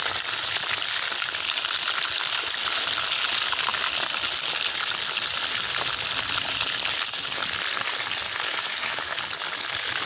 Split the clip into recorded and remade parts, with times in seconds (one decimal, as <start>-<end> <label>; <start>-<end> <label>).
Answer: 0.0-8.5 recorded; 8.5-9.2 remade; 9.2-10.1 recorded